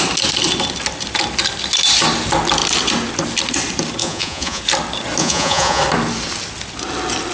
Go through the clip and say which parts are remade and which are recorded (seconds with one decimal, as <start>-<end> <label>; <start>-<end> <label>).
0.0-4.0 recorded; 4.0-4.6 remade; 4.6-5.2 recorded; 5.2-5.8 remade; 5.8-7.3 recorded